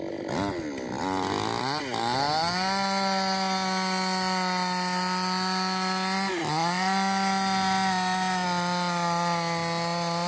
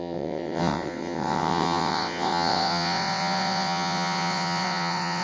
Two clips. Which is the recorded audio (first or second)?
first